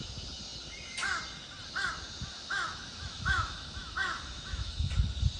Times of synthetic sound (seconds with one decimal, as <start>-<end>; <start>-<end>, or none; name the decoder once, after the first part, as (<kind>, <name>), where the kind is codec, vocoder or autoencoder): 2.3-4.9 (autoencoder, DAC-VAE)